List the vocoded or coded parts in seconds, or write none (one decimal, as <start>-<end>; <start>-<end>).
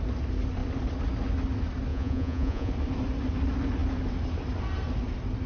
1.9-2.7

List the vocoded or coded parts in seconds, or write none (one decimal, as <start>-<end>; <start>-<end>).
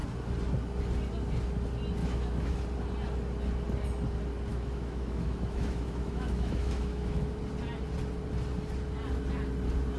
2.0-2.6; 4.5-7.4